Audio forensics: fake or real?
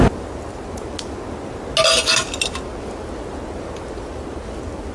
real